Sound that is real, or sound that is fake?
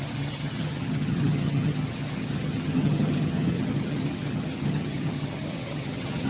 fake